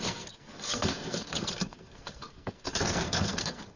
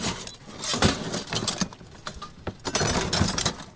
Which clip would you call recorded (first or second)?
second